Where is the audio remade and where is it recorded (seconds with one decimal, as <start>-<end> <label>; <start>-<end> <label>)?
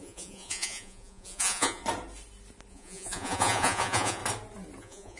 0.0-1.8 remade; 1.8-2.7 recorded; 2.7-4.2 remade; 4.2-4.8 recorded; 4.8-5.2 remade